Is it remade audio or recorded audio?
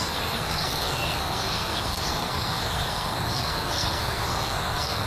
remade